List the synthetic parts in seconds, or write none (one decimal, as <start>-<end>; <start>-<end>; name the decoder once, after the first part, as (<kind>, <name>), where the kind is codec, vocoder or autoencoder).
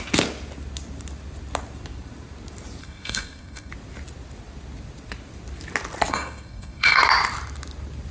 2.8-3.7 (codec, SNAC); 6.1-7.0